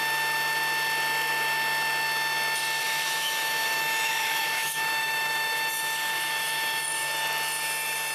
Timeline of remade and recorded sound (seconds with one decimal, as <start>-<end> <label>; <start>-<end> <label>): 0.0-2.8 recorded; 2.8-7.1 remade; 7.1-8.1 recorded